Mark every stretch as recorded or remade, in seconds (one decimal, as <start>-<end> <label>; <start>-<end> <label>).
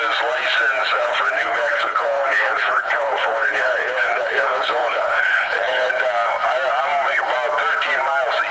0.0-0.8 recorded; 0.8-5.9 remade; 5.9-8.5 recorded